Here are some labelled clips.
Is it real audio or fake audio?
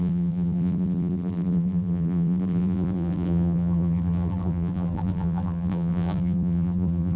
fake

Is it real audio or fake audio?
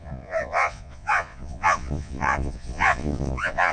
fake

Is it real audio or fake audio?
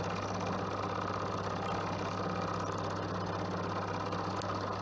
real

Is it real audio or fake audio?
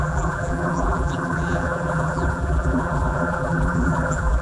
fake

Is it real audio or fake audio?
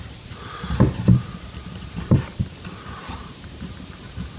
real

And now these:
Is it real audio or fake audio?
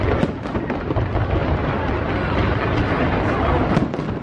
real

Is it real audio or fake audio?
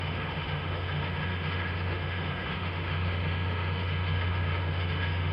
fake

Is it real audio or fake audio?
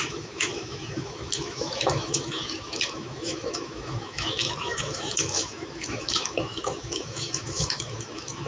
fake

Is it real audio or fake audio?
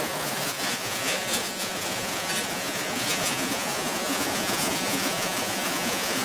fake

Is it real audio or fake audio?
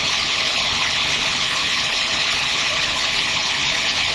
fake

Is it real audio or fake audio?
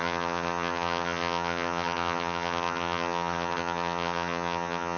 fake